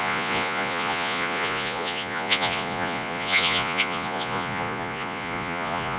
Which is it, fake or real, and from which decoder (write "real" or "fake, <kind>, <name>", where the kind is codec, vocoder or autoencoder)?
fake, vocoder, Vocos